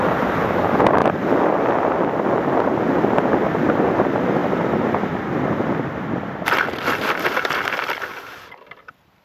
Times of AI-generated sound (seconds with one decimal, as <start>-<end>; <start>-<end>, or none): none